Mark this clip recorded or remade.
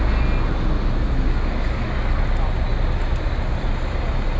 recorded